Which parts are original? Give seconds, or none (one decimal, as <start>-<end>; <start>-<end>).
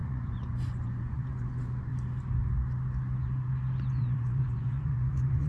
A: 1.9-3.9